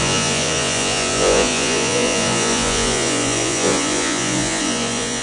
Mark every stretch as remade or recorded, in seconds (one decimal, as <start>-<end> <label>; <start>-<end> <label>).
0.0-5.2 remade